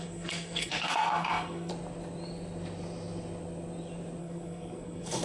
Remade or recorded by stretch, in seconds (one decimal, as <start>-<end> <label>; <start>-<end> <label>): 0.0-1.7 remade; 1.7-4.2 recorded; 4.2-5.2 remade